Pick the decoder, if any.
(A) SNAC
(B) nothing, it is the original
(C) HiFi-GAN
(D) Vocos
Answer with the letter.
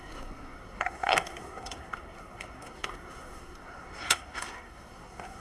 A